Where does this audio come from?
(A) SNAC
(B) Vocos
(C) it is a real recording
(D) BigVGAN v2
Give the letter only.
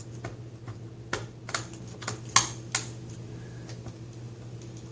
C